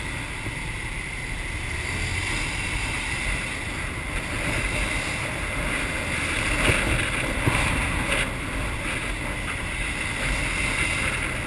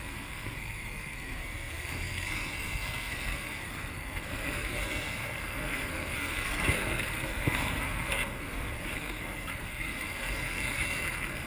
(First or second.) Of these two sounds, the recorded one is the first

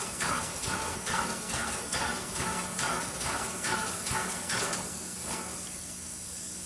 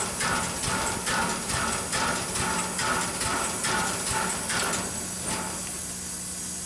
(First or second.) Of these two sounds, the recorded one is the second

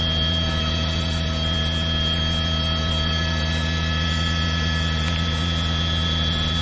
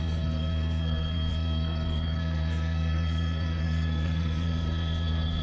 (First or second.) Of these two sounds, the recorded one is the first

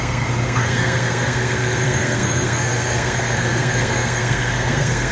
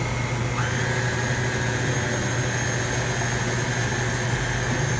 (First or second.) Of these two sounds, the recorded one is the second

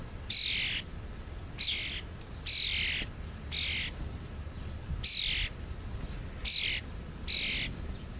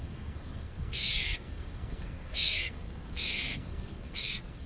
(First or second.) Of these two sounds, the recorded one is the first